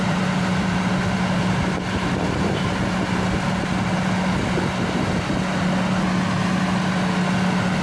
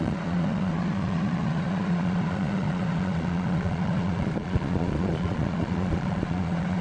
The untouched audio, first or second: first